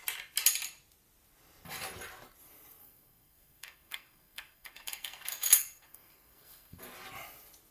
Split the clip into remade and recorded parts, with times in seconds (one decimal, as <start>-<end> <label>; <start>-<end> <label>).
0.0-2.8 recorded; 2.8-6.8 remade; 6.8-7.7 recorded